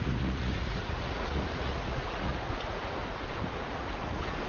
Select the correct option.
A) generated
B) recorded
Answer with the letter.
A